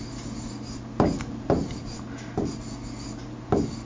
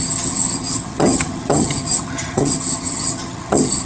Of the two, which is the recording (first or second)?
first